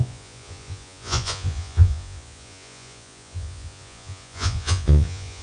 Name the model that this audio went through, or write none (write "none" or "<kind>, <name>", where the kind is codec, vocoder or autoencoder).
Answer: vocoder, Vocos